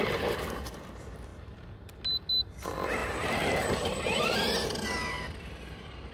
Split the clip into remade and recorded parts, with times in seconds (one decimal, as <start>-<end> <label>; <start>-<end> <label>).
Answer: 0.0-1.3 recorded; 1.3-1.9 remade; 1.9-3.0 recorded; 3.0-4.5 remade; 4.5-6.1 recorded